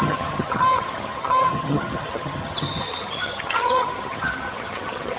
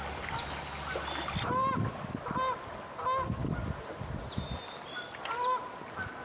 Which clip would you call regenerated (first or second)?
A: first